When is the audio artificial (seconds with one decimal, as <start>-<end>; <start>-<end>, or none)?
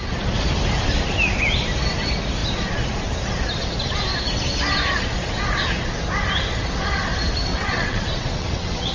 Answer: 7.5-8.9